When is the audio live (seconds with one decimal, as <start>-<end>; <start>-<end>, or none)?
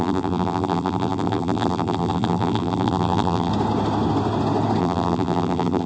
3.5-4.8